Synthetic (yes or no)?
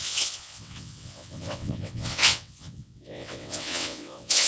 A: yes